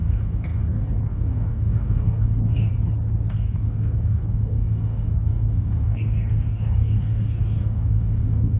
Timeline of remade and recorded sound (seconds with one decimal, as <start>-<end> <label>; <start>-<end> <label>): 0.0-2.7 remade; 2.7-3.3 recorded; 3.3-8.6 remade